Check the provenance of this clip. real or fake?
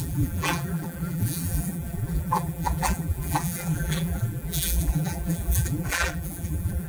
fake